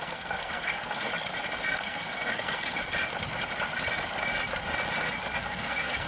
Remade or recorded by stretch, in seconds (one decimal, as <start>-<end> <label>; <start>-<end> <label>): 0.0-1.1 remade; 1.1-1.7 recorded; 1.7-2.8 remade; 2.8-5.4 recorded; 5.4-6.1 remade